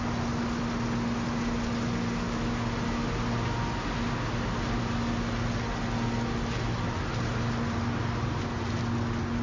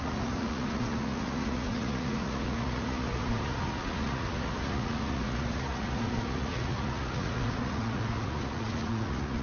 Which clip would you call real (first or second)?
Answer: first